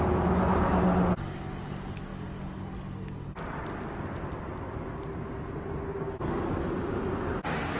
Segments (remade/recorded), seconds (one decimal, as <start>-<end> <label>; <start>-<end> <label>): 0.0-7.8 recorded